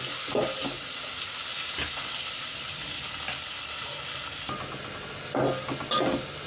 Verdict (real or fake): real